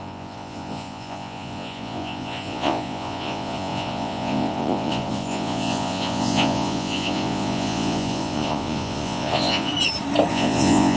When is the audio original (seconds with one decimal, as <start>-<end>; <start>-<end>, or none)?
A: 9.7-10.3